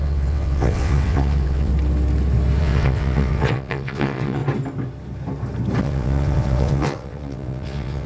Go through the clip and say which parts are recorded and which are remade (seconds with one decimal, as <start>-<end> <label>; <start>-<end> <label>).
0.0-1.7 remade; 1.7-2.6 recorded; 2.6-4.4 remade; 4.4-5.8 recorded; 5.8-8.1 remade